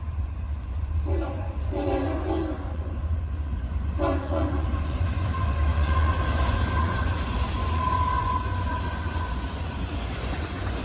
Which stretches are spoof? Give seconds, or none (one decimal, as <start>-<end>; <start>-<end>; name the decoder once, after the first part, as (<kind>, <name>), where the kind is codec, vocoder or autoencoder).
0.0-10.8 (vocoder, Vocos)